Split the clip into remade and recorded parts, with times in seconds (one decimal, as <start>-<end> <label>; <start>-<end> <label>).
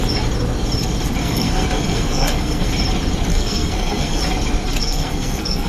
0.0-1.2 recorded; 1.2-2.7 remade; 2.7-3.3 recorded; 3.3-4.2 remade; 4.2-4.8 recorded; 4.8-5.7 remade